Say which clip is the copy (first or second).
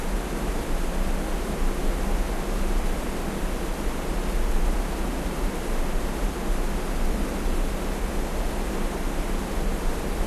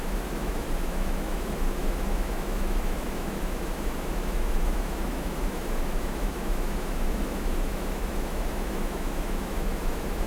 second